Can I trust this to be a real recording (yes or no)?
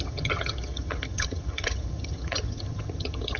no